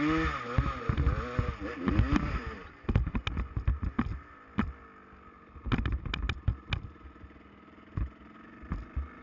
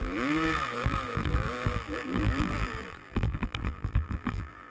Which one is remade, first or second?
second